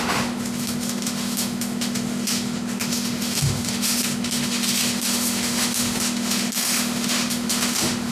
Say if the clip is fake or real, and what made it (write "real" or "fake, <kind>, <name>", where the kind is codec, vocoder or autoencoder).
fake, autoencoder, DAC-VAE